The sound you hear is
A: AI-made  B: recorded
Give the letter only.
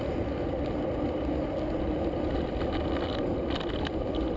B